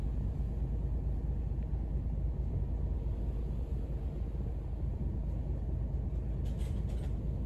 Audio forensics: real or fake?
real